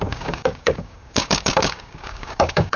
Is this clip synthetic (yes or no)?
yes